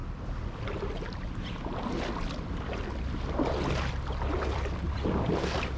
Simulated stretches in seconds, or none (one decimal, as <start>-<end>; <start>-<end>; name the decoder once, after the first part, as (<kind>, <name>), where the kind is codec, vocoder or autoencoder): none